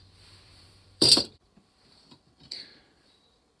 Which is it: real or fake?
fake